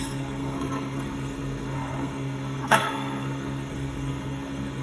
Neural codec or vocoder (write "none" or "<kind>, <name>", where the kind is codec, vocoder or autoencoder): codec, SNAC